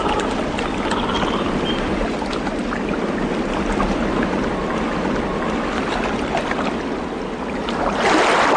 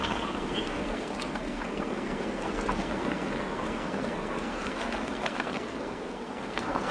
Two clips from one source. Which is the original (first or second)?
first